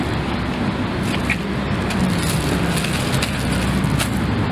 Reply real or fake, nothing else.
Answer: real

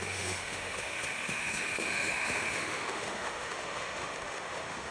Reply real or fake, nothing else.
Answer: fake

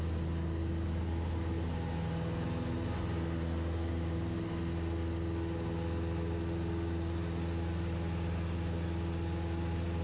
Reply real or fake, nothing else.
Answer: real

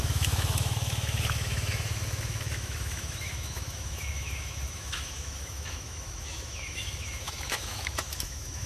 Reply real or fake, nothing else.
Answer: fake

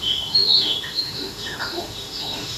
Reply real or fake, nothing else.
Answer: fake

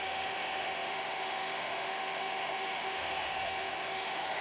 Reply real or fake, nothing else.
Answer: fake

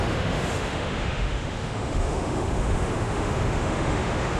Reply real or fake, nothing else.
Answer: fake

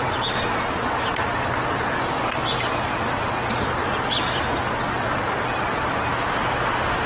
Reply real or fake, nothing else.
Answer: real